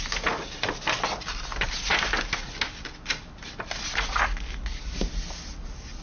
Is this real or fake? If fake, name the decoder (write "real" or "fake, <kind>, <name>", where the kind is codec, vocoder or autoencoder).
real